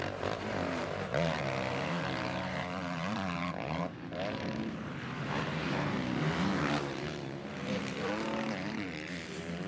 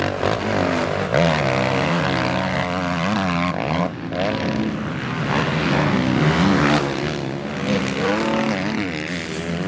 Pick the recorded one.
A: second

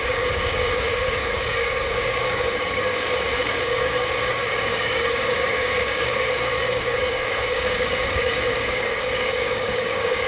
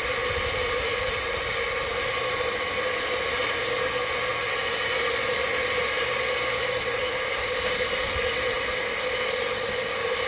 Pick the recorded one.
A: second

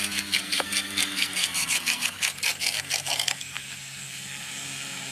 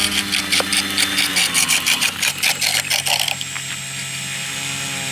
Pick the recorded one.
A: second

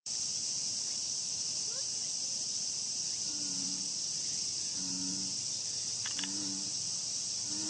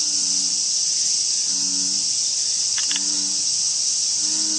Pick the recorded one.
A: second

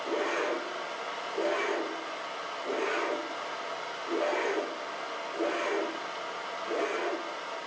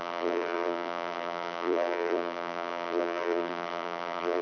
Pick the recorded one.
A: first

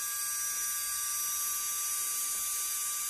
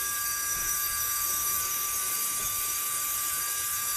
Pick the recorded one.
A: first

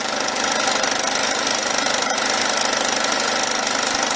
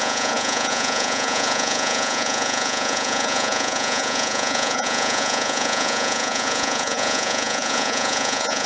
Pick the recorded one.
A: first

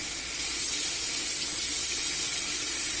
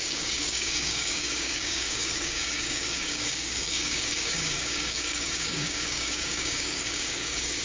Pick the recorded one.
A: first